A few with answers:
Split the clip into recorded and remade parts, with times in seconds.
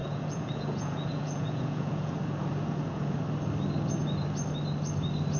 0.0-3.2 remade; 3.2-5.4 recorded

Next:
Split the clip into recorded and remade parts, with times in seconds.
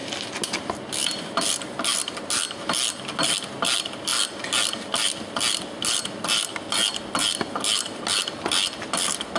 0.0-9.4 recorded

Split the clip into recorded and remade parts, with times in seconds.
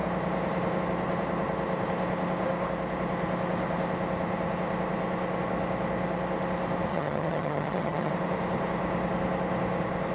0.0-6.9 recorded; 6.9-8.1 remade; 8.1-10.1 recorded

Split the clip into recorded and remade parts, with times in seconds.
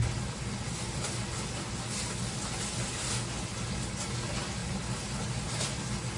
0.0-6.2 recorded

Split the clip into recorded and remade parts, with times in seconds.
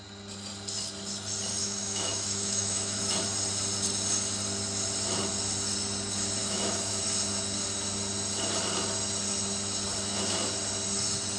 0.0-1.6 recorded; 1.6-3.0 remade; 3.0-6.4 recorded; 6.4-7.0 remade; 7.0-11.4 recorded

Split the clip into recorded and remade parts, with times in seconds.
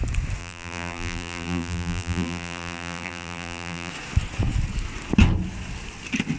0.0-0.4 recorded; 0.4-3.9 remade; 3.9-6.4 recorded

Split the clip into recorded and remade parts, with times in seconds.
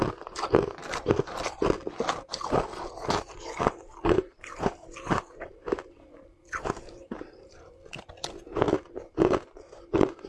0.0-0.8 recorded; 0.8-1.6 remade; 1.6-3.0 recorded; 3.0-7.6 remade; 7.6-10.3 recorded